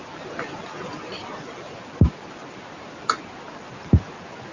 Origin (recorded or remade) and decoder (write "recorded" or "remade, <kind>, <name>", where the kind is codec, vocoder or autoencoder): recorded